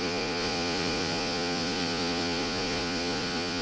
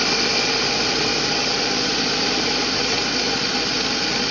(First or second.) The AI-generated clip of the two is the first